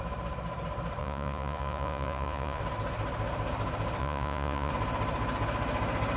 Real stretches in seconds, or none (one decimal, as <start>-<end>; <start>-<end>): 0.0-1.0; 2.6-4.0; 4.7-6.2